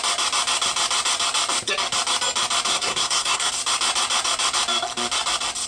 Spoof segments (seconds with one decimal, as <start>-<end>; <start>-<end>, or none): 2.7-3.5